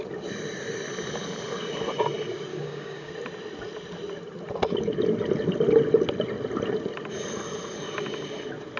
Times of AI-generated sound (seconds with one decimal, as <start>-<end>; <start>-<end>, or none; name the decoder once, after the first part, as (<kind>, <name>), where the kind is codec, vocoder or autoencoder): 2.5-3.1 (codec, DAC)

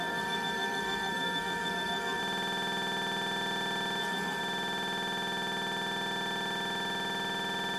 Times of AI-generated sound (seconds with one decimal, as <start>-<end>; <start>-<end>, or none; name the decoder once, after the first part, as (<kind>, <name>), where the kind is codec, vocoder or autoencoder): 0.0-2.2 (codec, SNAC); 4.0-4.4

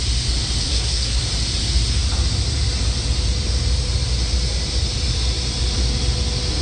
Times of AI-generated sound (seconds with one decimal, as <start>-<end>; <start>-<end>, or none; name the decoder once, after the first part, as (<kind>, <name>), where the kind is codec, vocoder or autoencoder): 0.6-1.2 (codec, SNAC)

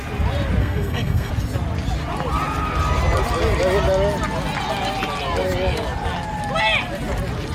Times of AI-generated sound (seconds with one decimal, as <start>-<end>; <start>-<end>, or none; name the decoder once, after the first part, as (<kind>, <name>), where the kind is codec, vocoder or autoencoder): 0.6-1.3 (codec, SNAC)

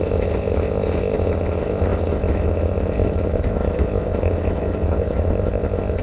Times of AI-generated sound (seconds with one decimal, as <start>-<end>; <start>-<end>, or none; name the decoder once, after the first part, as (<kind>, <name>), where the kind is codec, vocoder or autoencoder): 0.0-6.0 (codec, ZipCodec)